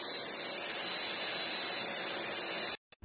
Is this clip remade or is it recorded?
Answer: recorded